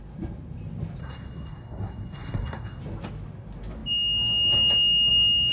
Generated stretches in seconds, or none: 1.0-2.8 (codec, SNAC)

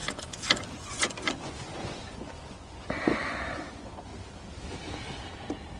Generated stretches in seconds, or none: 0.0-4.1 (vocoder, Vocos)

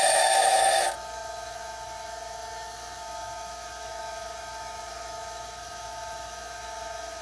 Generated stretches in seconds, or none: 0.0-7.2 (autoencoder, DAC-VAE)

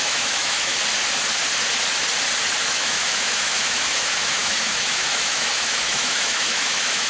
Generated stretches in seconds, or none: 0.0-0.7 (autoencoder, DAC-VAE); 2.6-7.1